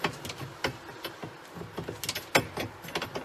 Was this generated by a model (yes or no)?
no